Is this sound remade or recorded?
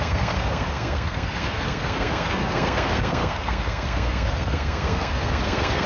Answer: remade